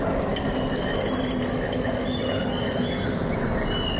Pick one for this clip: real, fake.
real